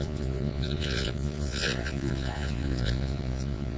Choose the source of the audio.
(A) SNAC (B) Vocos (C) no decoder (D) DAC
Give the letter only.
B